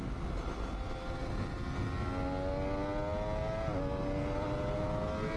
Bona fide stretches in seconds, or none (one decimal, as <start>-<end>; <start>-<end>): 0.0-5.4